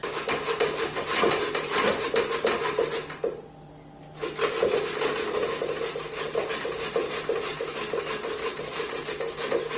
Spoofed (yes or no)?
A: no